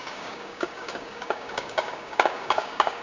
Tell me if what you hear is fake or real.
fake